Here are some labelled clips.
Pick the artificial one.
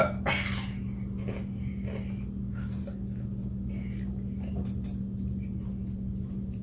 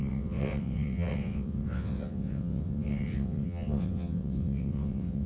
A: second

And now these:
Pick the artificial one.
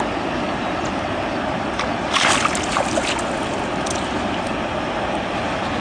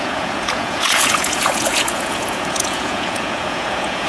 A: second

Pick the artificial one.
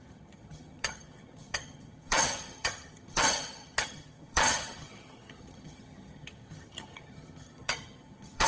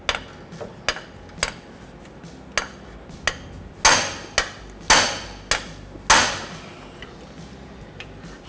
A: first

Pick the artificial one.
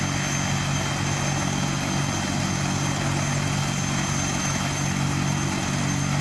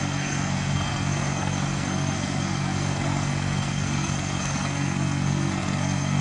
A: second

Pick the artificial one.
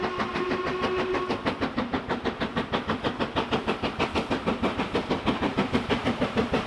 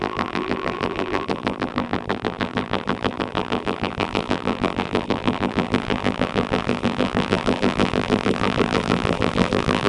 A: second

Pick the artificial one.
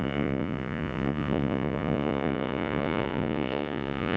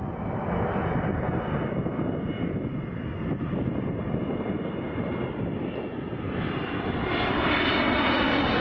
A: first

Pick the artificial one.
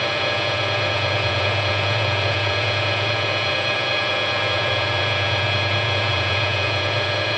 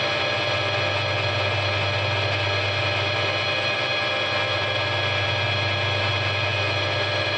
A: first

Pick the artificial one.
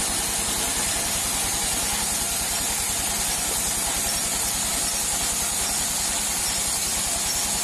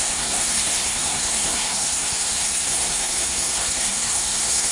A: second